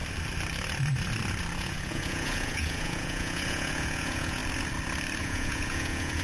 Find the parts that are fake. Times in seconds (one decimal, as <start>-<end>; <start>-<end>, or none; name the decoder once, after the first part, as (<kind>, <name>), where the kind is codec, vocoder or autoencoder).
1.6-4.4 (vocoder, Vocos); 5.2-6.2